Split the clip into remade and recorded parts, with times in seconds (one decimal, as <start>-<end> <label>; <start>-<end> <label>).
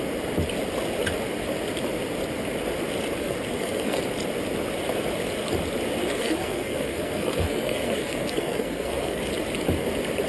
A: 0.0-3.2 recorded; 3.2-4.0 remade; 4.0-6.0 recorded; 6.0-9.2 remade; 9.2-10.3 recorded